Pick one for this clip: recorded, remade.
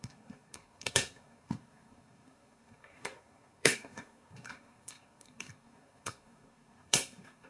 remade